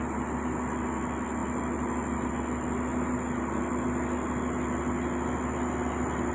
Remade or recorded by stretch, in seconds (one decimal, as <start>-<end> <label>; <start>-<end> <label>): 0.0-6.3 recorded